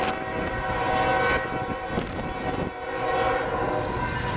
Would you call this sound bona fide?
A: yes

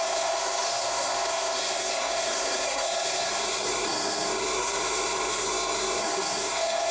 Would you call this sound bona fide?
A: no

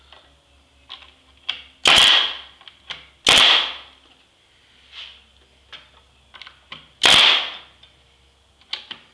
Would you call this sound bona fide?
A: yes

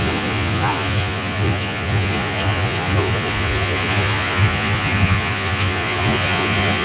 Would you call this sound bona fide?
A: no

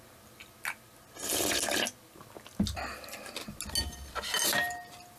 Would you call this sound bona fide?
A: yes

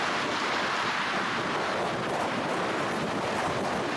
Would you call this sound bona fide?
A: yes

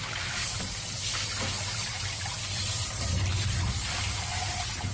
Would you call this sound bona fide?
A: yes